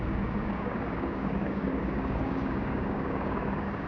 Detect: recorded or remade remade